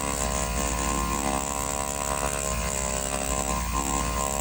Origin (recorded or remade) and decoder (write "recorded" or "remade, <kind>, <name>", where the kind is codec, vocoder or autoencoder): recorded